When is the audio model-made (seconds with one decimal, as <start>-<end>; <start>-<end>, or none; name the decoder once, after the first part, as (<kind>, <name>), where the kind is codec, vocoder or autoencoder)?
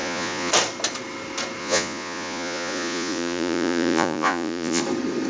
0.0-0.5 (vocoder, Vocos); 1.6-4.8